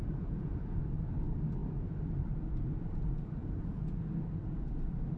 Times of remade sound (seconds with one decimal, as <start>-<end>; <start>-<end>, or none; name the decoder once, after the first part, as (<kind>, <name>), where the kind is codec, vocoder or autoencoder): 0.0-0.8 (vocoder, Vocos); 3.4-4.0